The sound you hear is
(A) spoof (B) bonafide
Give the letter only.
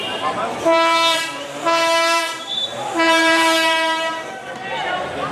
A